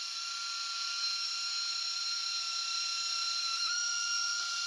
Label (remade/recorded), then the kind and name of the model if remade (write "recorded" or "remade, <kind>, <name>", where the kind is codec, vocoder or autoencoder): recorded